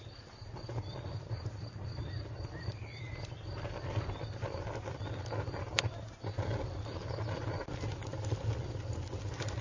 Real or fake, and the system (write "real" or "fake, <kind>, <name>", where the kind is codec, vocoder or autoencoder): real